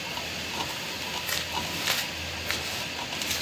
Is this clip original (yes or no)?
yes